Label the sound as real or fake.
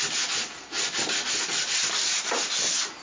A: real